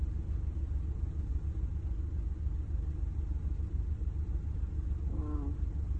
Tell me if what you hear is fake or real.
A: real